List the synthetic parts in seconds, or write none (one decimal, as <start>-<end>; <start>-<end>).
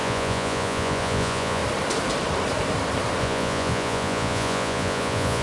0.0-1.6; 3.2-5.4